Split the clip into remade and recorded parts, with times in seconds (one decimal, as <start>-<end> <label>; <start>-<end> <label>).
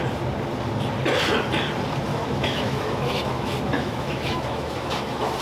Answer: 0.0-2.1 recorded; 2.1-5.4 remade